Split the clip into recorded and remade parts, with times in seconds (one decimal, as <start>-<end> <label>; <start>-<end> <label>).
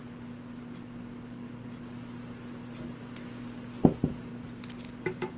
0.0-5.4 recorded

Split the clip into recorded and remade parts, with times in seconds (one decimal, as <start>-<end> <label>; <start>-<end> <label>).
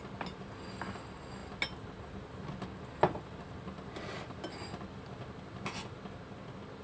0.0-6.8 recorded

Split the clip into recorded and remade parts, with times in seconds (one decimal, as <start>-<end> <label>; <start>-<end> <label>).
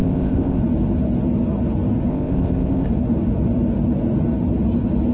0.0-0.6 remade; 0.6-2.1 recorded; 2.1-2.9 remade; 2.9-5.1 recorded